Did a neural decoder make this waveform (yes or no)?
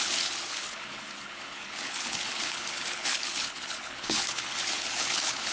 yes